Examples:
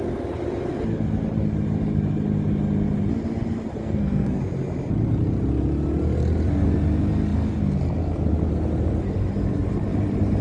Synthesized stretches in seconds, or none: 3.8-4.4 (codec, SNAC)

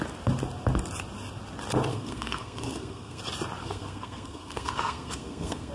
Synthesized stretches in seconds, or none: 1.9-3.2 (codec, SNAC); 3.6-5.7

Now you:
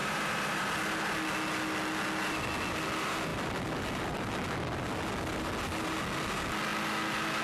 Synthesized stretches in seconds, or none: 0.0-0.6 (vocoder, BigVGAN v2)

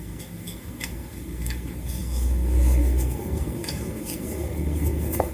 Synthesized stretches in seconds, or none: 0.0-5.3 (codec, SNAC)